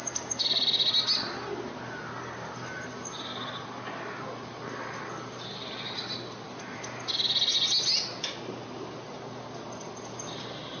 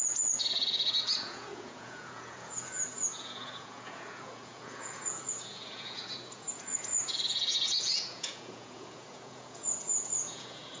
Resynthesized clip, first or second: second